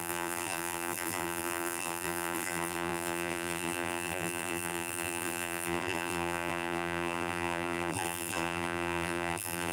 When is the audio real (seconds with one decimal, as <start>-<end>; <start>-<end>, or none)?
none